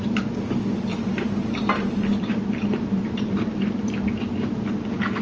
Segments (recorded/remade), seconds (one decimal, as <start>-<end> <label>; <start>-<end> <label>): 0.0-0.9 recorded; 0.9-4.0 remade; 4.0-5.2 recorded